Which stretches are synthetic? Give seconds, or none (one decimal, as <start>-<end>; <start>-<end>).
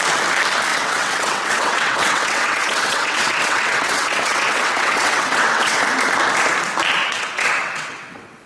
0.7-5.8; 7.0-8.5